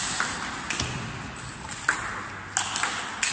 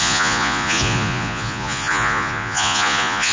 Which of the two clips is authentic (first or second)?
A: first